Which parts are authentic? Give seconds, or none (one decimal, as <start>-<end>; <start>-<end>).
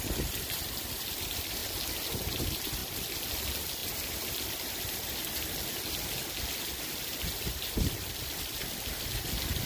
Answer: 1.6-2.2; 2.8-3.4; 3.8-6.4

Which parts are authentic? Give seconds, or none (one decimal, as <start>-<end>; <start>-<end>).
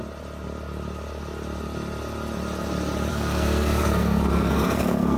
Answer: 0.0-3.1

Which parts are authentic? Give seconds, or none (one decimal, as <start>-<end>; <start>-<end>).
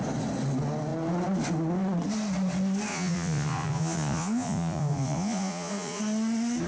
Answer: 0.0-2.9; 6.0-6.7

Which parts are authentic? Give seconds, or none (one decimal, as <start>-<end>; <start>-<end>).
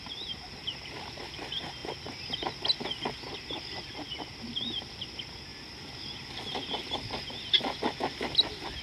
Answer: 0.0-8.8